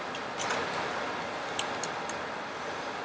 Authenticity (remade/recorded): recorded